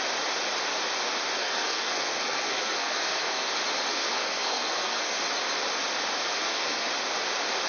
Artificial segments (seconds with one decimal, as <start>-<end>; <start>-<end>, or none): 1.4-3.5; 3.9-5.2; 6.3-6.9